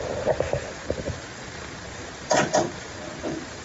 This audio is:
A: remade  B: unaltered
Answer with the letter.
A